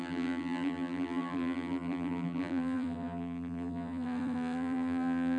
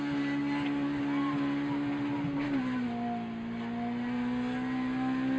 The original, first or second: second